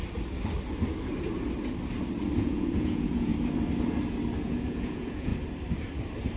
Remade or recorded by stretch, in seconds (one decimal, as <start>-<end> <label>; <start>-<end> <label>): 0.0-2.4 recorded; 2.4-3.3 remade; 3.3-4.4 recorded; 4.4-5.3 remade; 5.3-6.4 recorded